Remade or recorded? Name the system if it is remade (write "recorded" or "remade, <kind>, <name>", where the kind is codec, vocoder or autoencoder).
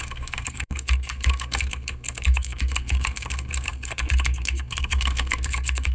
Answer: remade, codec, SNAC